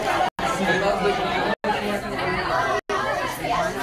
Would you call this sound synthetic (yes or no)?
no